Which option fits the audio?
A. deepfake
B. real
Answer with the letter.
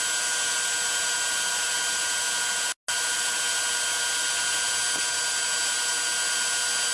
B